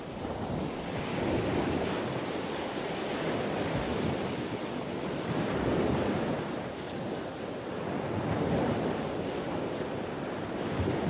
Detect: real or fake real